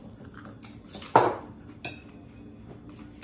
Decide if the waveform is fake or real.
real